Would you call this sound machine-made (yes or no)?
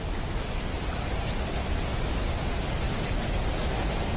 no